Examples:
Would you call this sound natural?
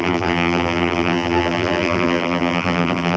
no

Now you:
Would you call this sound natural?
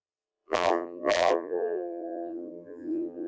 no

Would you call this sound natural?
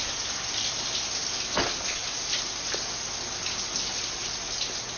yes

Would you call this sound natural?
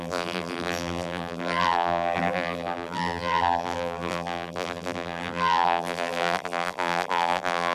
no